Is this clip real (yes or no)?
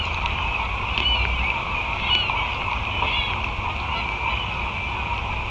yes